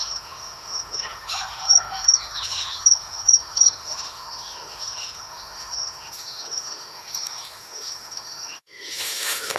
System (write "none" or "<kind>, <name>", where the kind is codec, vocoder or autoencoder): autoencoder, DAC-VAE